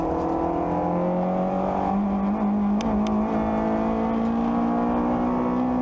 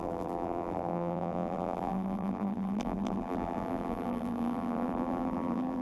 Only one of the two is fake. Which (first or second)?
second